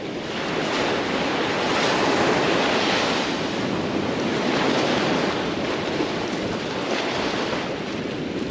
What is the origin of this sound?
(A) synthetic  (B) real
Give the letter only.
B